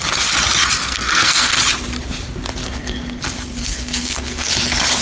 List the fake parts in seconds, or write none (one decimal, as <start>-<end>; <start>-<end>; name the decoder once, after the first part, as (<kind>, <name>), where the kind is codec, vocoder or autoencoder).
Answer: 0.8-1.6 (codec, SNAC); 2.6-3.2; 3.6-4.5

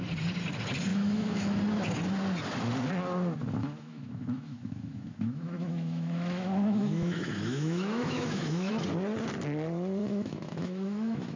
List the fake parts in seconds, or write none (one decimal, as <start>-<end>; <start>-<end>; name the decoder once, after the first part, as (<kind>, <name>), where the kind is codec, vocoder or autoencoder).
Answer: 0.9-1.6 (autoencoder, DAC-VAE); 3.6-8.7; 10.0-11.4

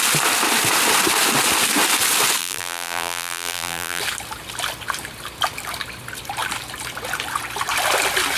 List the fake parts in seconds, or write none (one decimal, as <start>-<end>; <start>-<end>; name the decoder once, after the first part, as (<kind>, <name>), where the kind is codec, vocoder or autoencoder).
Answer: 2.4-4.0 (vocoder, BigVGAN v2)

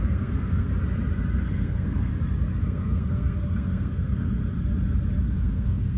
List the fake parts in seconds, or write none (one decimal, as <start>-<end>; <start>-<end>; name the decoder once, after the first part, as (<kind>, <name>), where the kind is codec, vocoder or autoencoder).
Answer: 0.0-0.7 (codec, SNAC); 1.4-2.1; 2.6-4.4; 5.2-6.0

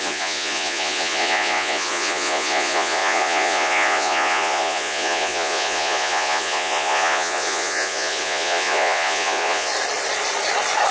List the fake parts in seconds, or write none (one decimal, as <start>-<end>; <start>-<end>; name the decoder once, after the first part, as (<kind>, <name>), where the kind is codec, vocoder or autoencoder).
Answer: 0.0-9.7 (vocoder, Vocos)

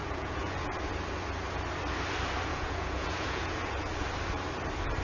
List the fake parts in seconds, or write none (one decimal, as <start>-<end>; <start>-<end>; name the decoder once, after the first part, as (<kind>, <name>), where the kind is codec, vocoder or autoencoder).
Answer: 0.0-0.7 (vocoder, Vocos); 2.5-3.9

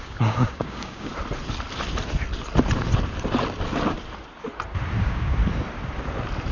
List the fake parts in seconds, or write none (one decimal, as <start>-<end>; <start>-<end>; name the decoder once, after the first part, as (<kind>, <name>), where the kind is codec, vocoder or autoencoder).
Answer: 0.0-1.1 (codec, DAC); 5.0-5.4

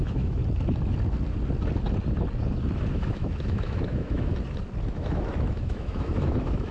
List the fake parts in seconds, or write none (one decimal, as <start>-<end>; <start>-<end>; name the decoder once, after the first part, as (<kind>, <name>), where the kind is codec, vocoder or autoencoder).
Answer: 0.0-0.4 (autoencoder, DAC-VAE); 2.9-4.3; 4.9-6.7